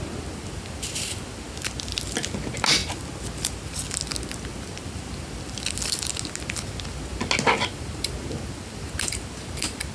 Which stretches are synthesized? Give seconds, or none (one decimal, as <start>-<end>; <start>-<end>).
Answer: none